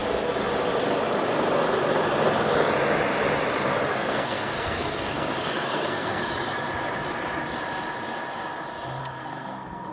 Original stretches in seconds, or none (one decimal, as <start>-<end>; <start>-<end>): 0.0-3.9; 6.3-9.0